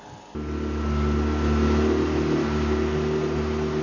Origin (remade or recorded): recorded